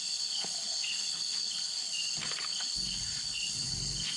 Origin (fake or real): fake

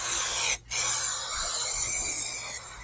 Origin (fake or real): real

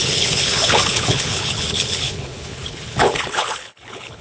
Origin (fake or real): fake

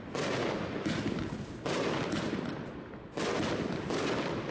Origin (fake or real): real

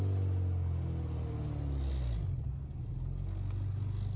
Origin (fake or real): real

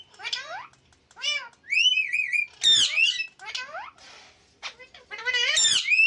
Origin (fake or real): real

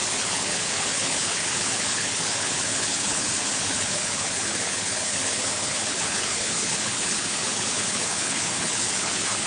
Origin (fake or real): fake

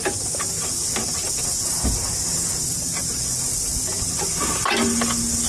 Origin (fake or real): real